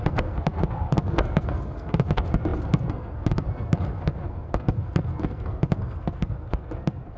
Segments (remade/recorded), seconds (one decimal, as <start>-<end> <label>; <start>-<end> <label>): 0.0-7.2 remade